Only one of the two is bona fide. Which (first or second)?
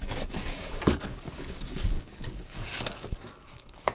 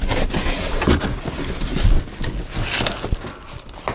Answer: second